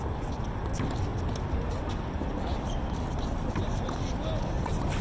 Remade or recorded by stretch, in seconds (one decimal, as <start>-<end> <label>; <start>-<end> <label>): 0.0-5.0 recorded